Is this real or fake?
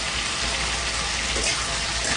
real